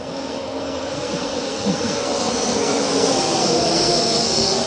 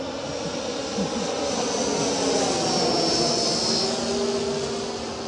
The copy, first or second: first